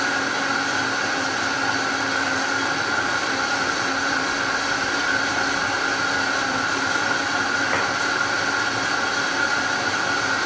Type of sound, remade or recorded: recorded